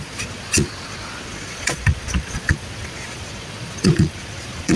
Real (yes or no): no